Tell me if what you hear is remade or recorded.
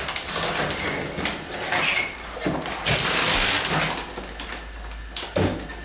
recorded